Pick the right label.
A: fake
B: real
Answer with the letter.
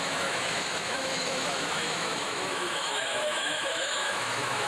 A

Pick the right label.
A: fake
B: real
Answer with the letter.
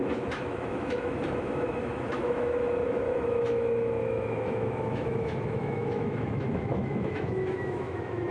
A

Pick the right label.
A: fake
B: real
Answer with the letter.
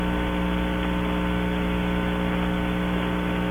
B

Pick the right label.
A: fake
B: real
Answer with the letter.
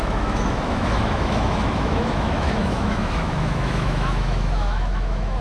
A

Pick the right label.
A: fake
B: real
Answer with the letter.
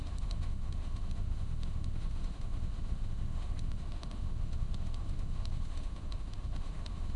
A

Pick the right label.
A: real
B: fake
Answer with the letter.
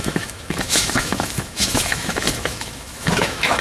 B